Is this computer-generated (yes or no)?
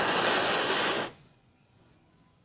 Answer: yes